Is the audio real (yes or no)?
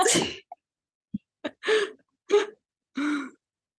yes